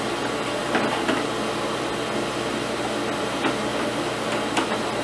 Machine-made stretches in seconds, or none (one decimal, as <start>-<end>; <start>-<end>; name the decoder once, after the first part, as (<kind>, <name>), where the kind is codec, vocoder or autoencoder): none